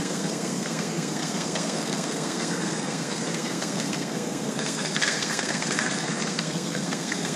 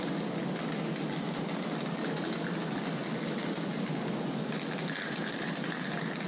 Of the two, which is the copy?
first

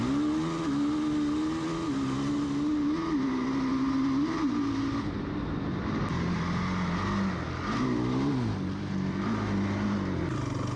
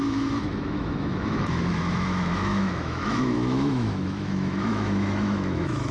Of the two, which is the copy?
second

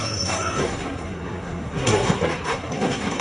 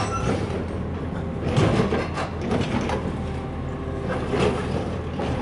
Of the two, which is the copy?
first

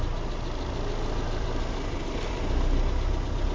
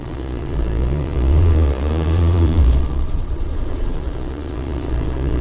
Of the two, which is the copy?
second